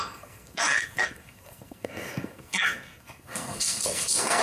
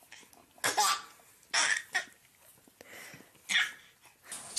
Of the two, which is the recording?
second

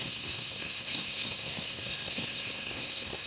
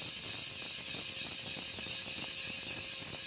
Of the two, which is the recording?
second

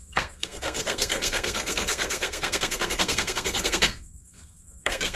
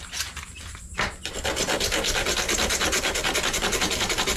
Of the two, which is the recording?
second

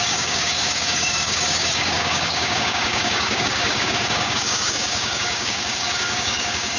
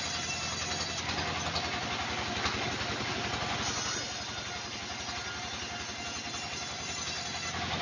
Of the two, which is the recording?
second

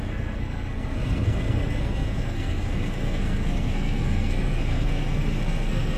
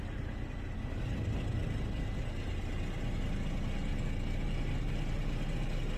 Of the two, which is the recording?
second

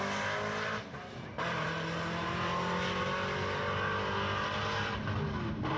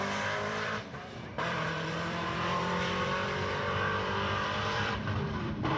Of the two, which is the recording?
first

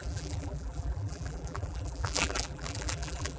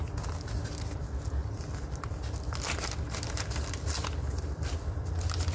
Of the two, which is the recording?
second